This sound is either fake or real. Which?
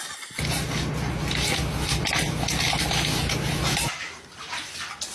real